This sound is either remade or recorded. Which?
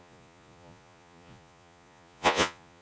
remade